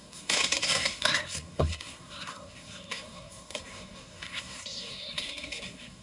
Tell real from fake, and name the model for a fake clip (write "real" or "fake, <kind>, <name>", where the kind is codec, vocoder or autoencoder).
fake, codec, SNAC